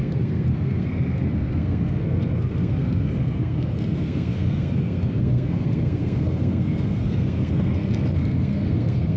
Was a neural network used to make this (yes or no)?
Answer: yes